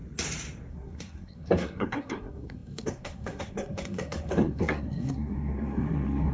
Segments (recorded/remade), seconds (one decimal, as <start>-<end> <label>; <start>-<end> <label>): 0.0-0.7 recorded; 0.7-6.3 remade